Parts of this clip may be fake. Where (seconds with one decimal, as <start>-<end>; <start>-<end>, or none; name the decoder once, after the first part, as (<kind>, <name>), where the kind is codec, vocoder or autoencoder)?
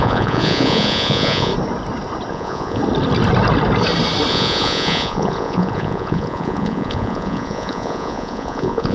0.0-1.5 (vocoder, Vocos); 2.3-2.8; 4.3-8.9